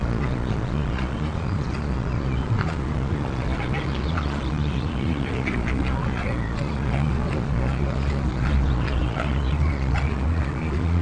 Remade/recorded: remade